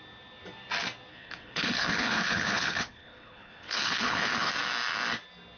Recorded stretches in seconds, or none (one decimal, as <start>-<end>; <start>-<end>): 0.0-1.1; 4.5-5.6